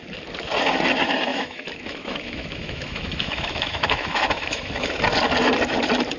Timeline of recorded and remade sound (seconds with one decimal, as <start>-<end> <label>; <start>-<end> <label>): 0.0-1.3 recorded; 1.3-5.0 remade; 5.0-6.2 recorded